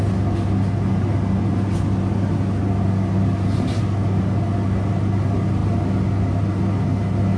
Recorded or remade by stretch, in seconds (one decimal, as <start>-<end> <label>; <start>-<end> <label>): 0.0-7.4 recorded